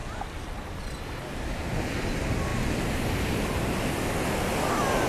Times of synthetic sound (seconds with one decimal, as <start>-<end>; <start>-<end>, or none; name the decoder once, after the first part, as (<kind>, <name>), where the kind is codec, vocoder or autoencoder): 0.0-0.7 (vocoder, BigVGAN v2)